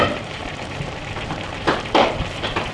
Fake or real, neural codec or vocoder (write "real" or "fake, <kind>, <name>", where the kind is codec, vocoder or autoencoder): fake, vocoder, BigVGAN v2